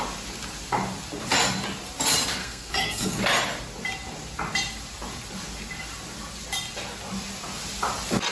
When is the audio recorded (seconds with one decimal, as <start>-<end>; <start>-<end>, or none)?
0.0-2.4; 3.2-8.3